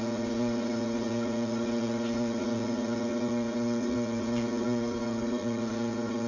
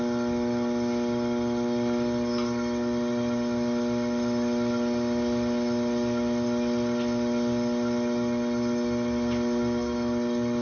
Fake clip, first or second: first